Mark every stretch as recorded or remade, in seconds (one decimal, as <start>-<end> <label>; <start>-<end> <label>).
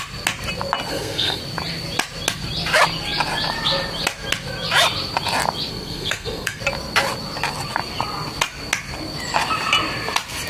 0.0-0.9 recorded; 0.9-1.4 remade; 1.4-5.7 recorded; 5.7-6.6 remade; 6.6-10.5 recorded